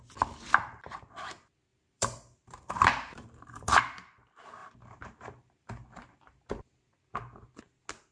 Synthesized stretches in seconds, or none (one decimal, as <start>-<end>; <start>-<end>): 1.7-3.8; 4.6-6.5